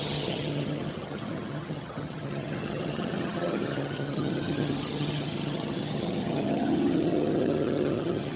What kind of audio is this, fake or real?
fake